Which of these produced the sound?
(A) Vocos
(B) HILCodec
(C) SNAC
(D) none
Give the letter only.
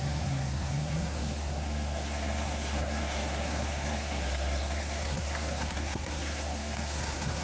C